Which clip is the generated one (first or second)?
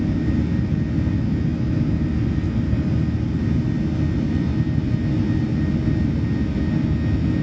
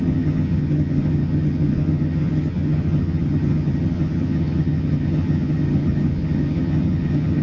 second